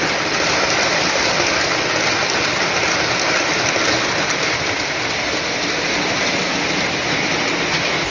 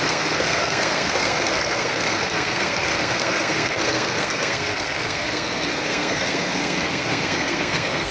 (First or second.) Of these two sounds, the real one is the first